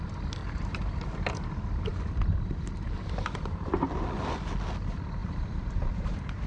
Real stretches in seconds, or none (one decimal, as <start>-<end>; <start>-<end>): 0.0-0.4; 1.5-5.2